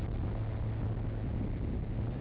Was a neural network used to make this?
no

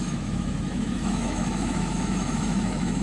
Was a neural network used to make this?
yes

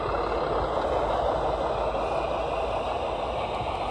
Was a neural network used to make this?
no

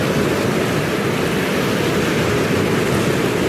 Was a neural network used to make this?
no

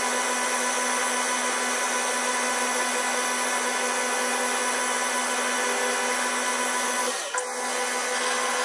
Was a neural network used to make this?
no